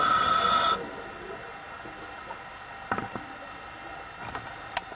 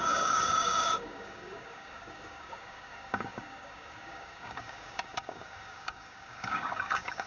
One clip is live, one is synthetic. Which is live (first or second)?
first